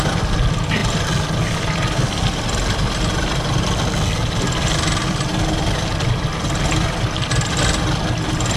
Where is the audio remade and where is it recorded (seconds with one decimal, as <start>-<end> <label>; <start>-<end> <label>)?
0.0-8.6 recorded

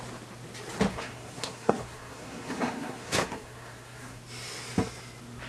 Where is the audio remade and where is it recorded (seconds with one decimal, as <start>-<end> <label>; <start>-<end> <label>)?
0.0-0.9 recorded; 0.9-4.2 remade; 4.2-5.5 recorded

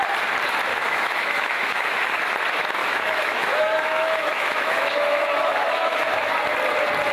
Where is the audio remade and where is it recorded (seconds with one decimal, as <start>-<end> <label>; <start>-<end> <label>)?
0.0-0.7 recorded; 0.7-2.2 remade; 2.2-2.8 recorded; 2.8-6.3 remade; 6.3-7.1 recorded

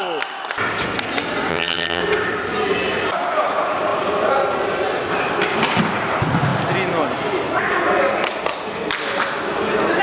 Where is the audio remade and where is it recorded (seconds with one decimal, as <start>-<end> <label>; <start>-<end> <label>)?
0.0-1.5 recorded; 1.5-2.0 remade; 2.0-10.0 recorded

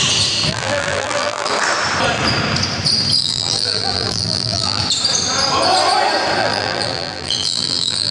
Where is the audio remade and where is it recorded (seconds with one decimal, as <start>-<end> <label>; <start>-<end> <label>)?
0.0-0.5 recorded; 0.5-1.5 remade; 1.5-3.2 recorded; 3.2-4.8 remade; 4.8-6.4 recorded; 6.4-8.1 remade

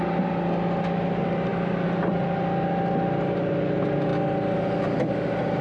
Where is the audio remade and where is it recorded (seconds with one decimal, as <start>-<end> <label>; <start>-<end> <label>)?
0.0-5.6 recorded

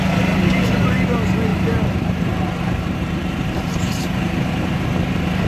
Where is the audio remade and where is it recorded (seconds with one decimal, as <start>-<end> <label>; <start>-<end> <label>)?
0.0-1.5 recorded; 1.5-4.8 remade; 4.8-5.5 recorded

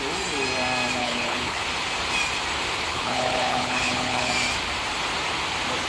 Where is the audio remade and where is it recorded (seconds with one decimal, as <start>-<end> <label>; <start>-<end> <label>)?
0.0-1.0 recorded; 1.0-1.6 remade; 1.6-2.9 recorded; 2.9-4.3 remade; 4.3-5.9 recorded